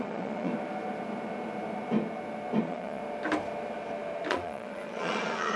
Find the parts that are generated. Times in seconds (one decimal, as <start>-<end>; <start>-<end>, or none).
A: 0.0-0.5; 2.6-3.0; 4.3-5.6